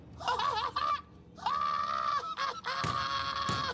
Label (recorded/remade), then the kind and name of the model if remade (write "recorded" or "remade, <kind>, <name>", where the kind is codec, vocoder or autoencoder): recorded